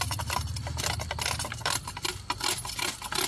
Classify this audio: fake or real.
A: real